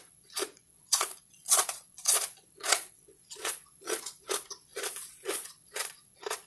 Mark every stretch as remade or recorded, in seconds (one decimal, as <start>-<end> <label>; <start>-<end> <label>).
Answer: 0.0-6.5 remade